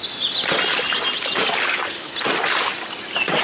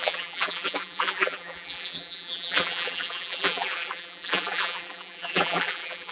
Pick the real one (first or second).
first